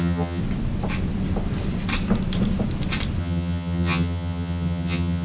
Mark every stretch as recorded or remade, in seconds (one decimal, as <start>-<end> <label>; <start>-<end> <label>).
0.0-0.4 remade; 0.4-3.2 recorded; 3.2-5.2 remade